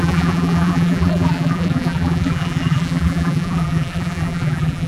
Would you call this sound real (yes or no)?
no